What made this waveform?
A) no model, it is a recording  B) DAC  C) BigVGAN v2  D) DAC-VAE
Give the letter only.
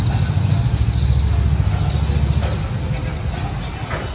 A